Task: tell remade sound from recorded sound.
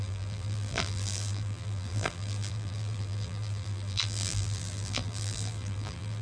remade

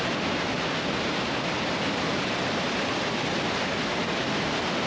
recorded